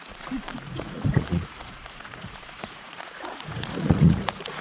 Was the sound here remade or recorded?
remade